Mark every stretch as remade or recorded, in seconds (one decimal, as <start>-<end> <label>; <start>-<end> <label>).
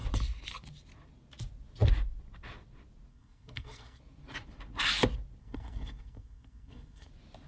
0.0-3.1 recorded; 3.1-4.0 remade; 4.0-5.4 recorded; 5.4-7.1 remade; 7.1-7.5 recorded